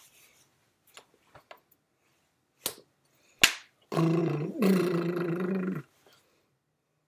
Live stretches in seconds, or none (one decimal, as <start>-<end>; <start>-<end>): 0.0-4.2; 5.5-7.1

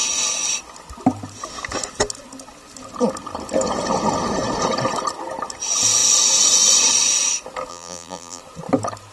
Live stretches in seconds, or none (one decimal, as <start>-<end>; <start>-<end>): 0.0-7.7; 8.4-9.1

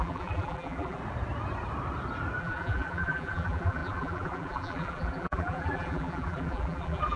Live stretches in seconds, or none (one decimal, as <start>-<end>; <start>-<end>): 1.0-2.4

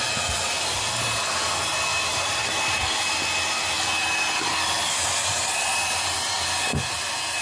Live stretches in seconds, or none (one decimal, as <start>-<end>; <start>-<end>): 0.0-1.9; 2.5-7.4

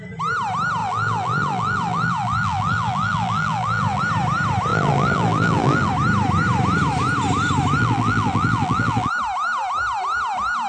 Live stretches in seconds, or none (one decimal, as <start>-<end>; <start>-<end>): 0.0-0.8; 4.0-4.7; 5.9-7.8; 9.1-10.7